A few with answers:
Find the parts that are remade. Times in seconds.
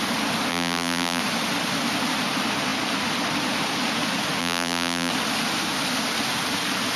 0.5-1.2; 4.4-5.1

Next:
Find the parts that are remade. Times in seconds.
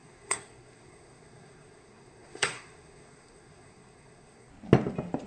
0.0-4.5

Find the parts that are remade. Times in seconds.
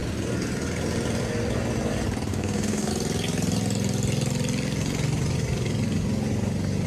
2.3-2.9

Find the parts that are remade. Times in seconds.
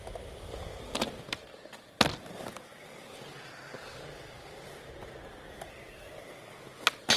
none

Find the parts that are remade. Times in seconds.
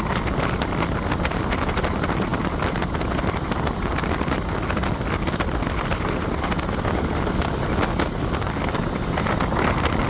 none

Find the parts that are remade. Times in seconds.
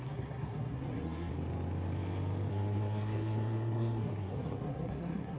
0.0-1.3; 2.5-5.4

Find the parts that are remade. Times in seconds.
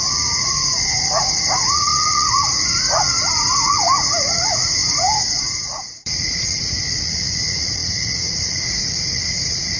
0.0-9.8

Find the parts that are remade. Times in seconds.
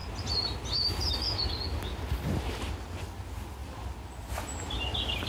none